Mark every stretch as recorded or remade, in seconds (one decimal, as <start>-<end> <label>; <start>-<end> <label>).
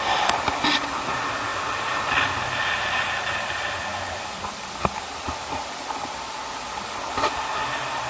0.0-8.1 recorded